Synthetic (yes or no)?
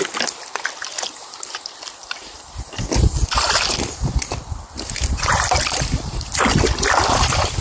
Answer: yes